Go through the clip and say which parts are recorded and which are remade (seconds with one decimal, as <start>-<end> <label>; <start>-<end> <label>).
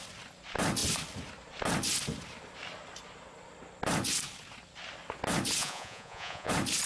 0.0-5.6 recorded; 5.6-6.5 remade; 6.5-6.9 recorded